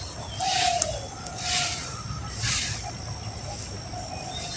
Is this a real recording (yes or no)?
yes